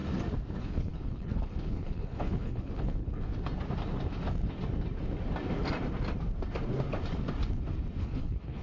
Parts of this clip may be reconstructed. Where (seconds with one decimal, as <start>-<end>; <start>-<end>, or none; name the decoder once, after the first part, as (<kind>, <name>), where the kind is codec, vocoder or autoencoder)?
0.6-3.3 (codec, HILCodec); 8.0-8.6